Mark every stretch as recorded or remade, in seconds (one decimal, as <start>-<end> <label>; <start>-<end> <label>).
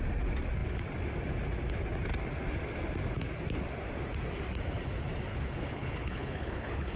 0.0-5.3 recorded; 5.3-7.0 remade